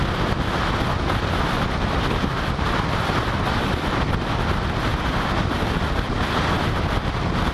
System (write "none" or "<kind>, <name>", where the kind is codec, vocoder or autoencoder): none